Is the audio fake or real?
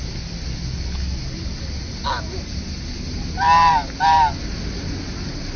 real